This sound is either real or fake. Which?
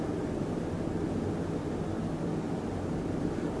real